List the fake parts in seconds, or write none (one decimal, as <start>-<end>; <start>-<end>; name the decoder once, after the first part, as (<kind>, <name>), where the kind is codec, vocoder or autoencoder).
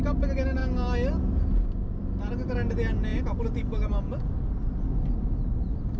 none